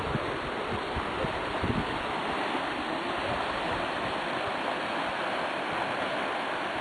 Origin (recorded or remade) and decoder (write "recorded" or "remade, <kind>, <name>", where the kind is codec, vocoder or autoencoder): recorded